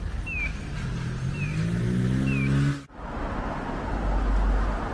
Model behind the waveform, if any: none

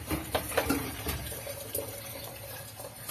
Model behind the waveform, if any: vocoder, BigVGAN v2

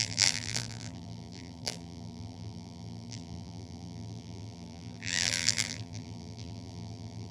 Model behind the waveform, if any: vocoder, BigVGAN v2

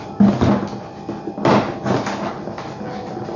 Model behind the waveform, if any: none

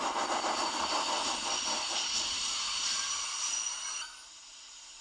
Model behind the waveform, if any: none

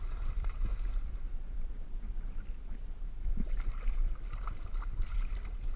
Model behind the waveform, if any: vocoder, BigVGAN v2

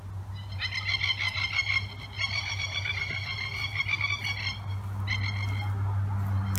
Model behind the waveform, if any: none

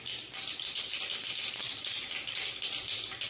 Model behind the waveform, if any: none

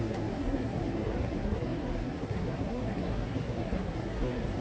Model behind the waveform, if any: codec, SNAC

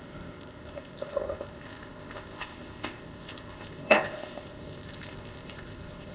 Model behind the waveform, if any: codec, ZipCodec